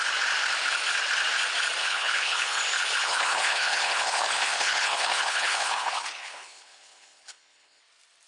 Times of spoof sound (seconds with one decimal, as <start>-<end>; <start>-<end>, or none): 1.8-2.6; 3.0-7.8